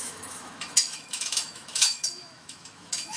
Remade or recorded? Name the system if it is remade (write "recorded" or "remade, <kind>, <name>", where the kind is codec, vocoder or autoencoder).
remade, autoencoder, DAC-VAE